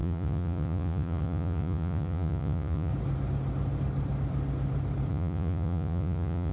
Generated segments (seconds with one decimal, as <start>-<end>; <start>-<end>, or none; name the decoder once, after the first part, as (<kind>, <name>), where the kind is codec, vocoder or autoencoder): 0.0-2.9 (vocoder, Vocos); 5.1-6.5